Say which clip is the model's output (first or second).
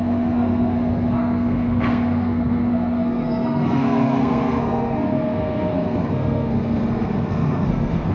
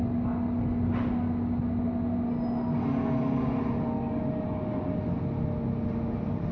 first